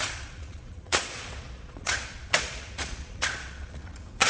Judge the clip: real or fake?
fake